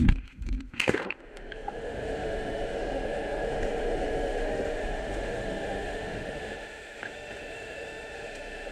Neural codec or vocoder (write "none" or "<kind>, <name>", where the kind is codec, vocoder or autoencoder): autoencoder, DAC-VAE